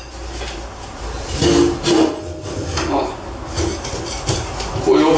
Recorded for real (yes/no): yes